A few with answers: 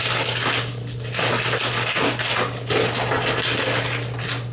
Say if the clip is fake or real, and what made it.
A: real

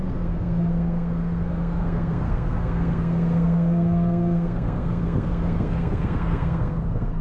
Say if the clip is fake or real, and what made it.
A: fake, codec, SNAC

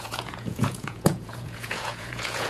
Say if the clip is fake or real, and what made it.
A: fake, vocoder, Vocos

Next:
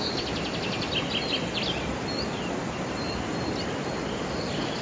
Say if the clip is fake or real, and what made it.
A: real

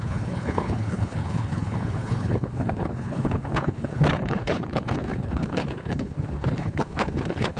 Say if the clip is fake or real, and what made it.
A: fake, codec, HILCodec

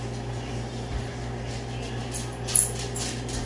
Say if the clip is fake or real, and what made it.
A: real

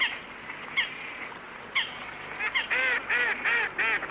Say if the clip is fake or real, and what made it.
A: real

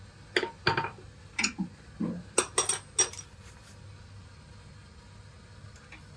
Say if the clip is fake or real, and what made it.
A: real